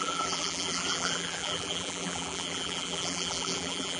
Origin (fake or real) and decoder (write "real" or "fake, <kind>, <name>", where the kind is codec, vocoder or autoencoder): fake, vocoder, BigVGAN v2